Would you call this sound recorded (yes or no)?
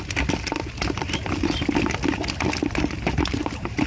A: yes